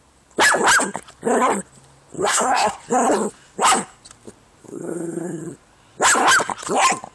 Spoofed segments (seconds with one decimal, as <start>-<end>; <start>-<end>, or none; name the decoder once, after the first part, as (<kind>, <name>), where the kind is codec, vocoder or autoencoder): 2.2-2.8 (codec, SNAC); 4.6-5.4